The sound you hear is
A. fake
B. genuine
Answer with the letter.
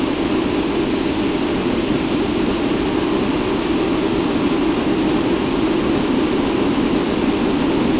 B